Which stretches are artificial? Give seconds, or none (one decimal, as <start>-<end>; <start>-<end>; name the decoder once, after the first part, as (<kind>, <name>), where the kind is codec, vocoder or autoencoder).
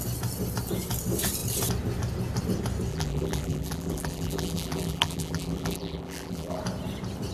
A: 2.9-6.6 (vocoder, BigVGAN v2)